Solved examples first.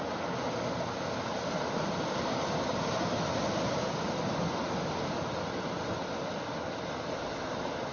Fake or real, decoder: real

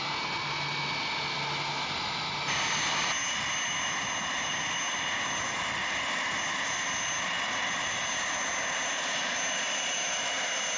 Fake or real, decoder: real